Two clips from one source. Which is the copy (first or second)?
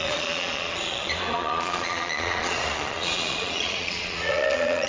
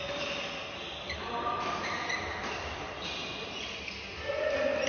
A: first